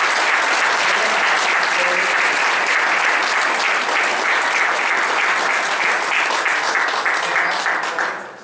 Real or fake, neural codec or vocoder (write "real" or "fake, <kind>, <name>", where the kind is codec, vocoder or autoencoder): real